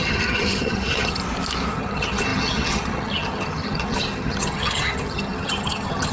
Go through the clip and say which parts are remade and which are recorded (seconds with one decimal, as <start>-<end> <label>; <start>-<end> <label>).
0.0-1.2 remade; 1.2-1.7 recorded; 1.7-6.1 remade